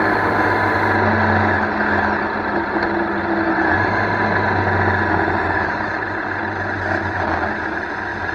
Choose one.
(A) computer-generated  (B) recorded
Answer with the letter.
B